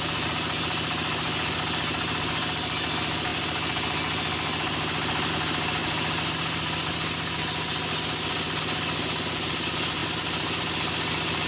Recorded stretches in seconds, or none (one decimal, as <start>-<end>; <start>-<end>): 0.0-11.5